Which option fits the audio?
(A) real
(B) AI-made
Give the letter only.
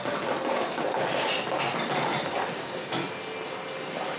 A